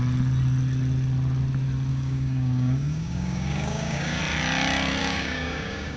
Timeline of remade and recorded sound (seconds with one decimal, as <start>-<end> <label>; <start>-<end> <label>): 0.0-1.9 recorded; 1.9-4.2 remade; 4.2-5.0 recorded; 5.0-6.0 remade

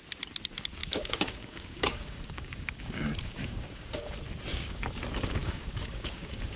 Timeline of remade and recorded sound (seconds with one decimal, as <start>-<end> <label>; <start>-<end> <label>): 0.0-0.8 recorded; 0.8-4.1 remade; 4.1-4.5 recorded; 4.5-5.0 remade; 5.0-5.4 recorded; 5.4-6.6 remade

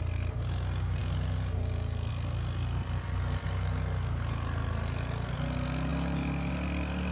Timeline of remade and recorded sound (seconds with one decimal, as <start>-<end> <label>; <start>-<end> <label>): 0.0-7.1 recorded

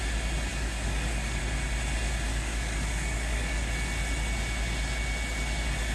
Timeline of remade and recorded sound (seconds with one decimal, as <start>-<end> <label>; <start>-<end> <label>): 0.0-0.5 recorded; 0.5-1.4 remade; 1.4-2.3 recorded; 2.3-3.7 remade; 3.7-5.9 recorded

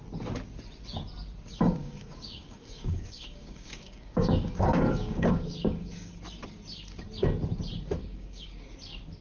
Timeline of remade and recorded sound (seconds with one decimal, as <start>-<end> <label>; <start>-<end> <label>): 0.0-1.8 recorded; 1.8-6.1 remade; 6.1-8.0 recorded; 8.0-8.6 remade; 8.6-9.2 recorded

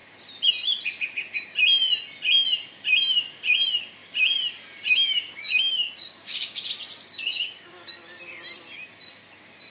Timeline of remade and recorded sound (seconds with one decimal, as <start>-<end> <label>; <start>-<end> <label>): 0.0-4.9 recorded; 4.9-6.7 remade; 6.7-7.2 recorded; 7.2-7.9 remade; 7.9-9.7 recorded